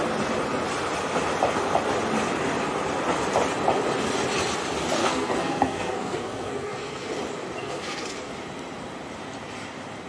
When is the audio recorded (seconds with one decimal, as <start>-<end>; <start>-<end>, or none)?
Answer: 0.0-5.0; 7.1-7.6; 8.3-10.1